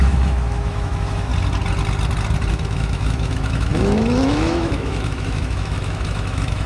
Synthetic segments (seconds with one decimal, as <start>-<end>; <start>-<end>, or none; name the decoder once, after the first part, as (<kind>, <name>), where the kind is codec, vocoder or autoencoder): 0.0-1.3 (autoencoder, DAC-VAE); 2.5-6.7

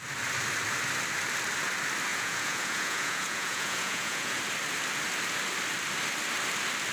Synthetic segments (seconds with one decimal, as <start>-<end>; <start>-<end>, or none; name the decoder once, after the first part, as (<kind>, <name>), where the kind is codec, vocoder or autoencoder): 2.1-4.4 (vocoder, Vocos)

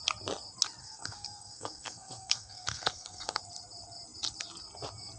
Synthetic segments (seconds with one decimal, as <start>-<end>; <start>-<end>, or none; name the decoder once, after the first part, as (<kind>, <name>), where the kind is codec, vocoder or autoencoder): 0.8-3.4 (codec, SNAC)

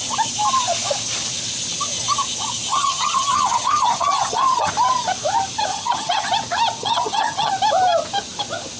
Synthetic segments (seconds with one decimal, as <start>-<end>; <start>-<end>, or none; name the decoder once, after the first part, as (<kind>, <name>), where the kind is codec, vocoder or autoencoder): 2.7-4.7 (vocoder, HiFi-GAN); 5.7-6.3; 6.8-7.5

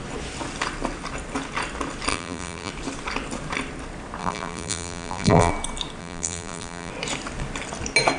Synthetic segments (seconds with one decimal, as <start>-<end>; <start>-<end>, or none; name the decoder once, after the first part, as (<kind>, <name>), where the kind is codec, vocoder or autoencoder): 2.1-2.7 (vocoder, BigVGAN v2); 4.2-5.5; 6.0-6.9